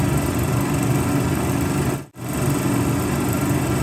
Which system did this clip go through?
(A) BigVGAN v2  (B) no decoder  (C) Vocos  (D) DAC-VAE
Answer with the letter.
B